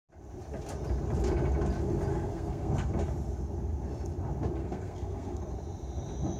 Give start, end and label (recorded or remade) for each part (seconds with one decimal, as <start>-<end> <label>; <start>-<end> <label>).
0.0-2.1 recorded; 2.1-2.9 remade; 2.9-4.6 recorded; 4.6-5.5 remade; 5.5-6.4 recorded